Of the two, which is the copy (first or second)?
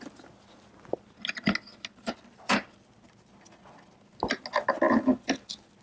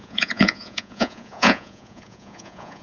second